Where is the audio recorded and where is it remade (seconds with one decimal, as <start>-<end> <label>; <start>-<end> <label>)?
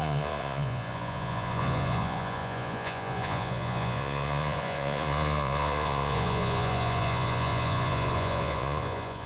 0.0-9.3 remade